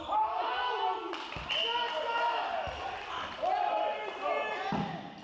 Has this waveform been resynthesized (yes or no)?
no